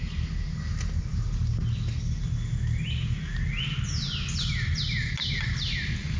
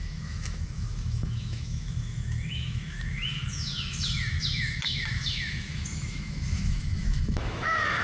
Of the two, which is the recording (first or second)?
first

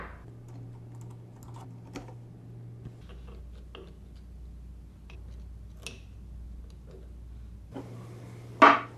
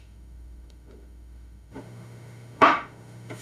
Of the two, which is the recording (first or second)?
first